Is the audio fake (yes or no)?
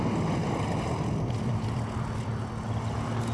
no